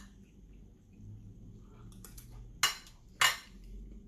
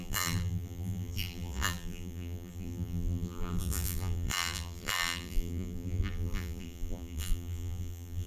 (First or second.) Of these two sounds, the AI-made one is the second